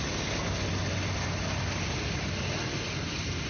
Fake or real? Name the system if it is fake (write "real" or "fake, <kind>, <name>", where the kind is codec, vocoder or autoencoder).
real